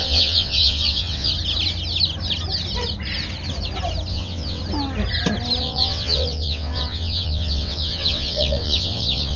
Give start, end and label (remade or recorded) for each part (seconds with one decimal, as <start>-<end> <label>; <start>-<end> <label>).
0.0-1.3 remade; 1.3-4.1 recorded; 4.1-4.6 remade; 4.6-5.6 recorded; 5.6-9.4 remade